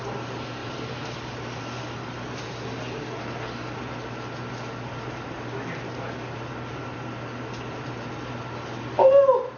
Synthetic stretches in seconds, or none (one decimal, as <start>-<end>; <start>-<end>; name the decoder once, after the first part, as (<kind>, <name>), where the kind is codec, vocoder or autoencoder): 0.6-1.6 (vocoder, BigVGAN v2)